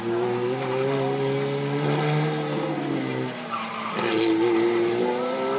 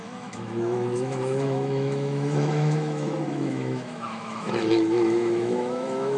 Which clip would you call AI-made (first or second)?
second